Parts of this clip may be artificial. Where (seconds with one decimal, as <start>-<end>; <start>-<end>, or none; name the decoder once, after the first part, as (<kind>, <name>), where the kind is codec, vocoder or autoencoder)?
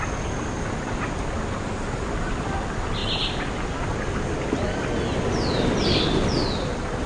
none